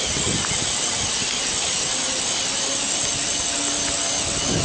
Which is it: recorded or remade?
recorded